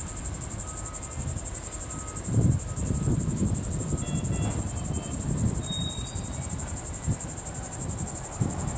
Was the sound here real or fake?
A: real